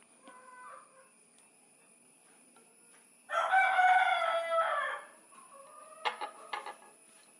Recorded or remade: recorded